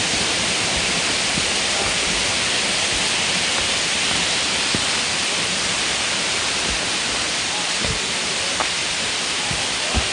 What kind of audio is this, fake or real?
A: real